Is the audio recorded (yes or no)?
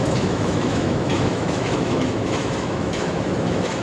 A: no